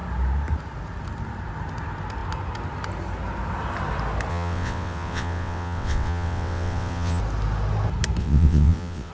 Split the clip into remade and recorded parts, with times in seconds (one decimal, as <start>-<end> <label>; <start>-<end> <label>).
0.0-4.3 recorded; 4.3-7.2 remade; 7.2-8.2 recorded; 8.2-9.1 remade